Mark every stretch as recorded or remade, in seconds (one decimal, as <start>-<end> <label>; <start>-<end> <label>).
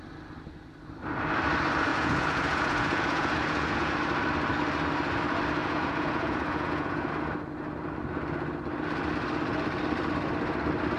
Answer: 0.0-1.9 recorded; 1.9-3.9 remade; 3.9-5.6 recorded; 5.6-7.1 remade; 7.1-11.0 recorded